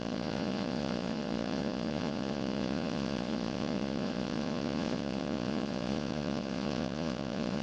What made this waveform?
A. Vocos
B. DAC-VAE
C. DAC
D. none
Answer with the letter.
A